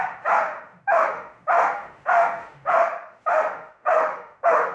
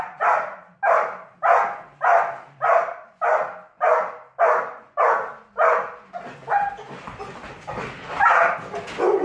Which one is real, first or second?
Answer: second